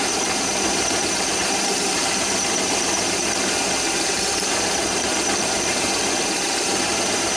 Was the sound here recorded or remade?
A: remade